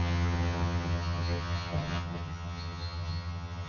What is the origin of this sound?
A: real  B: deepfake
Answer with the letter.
B